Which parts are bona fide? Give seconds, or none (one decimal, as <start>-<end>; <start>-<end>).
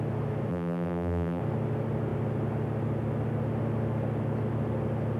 0.0-0.5; 1.4-5.2